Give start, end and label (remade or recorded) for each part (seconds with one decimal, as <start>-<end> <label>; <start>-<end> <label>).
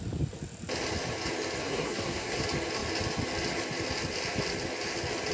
0.0-1.6 recorded; 1.6-2.4 remade; 2.4-5.3 recorded